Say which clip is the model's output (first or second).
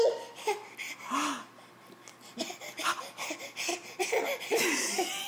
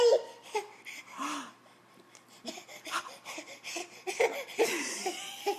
second